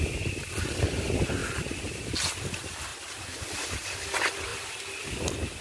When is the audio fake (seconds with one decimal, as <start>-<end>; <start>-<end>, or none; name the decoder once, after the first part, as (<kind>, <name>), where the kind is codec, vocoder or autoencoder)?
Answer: 1.4-2.0 (vocoder, BigVGAN v2); 2.9-3.4; 4.5-5.1